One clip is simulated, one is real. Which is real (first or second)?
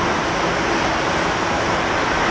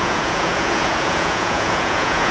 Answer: first